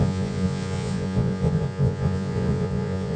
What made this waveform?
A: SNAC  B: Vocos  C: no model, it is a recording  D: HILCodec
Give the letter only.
B